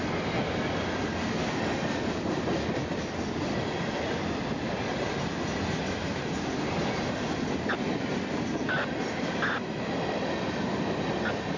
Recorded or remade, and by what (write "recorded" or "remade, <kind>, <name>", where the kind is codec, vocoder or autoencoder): recorded